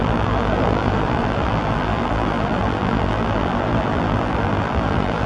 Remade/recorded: remade